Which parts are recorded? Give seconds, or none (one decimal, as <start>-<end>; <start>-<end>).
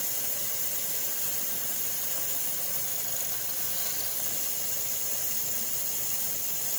2.9-4.6